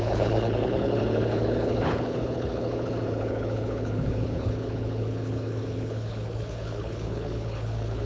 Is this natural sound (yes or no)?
no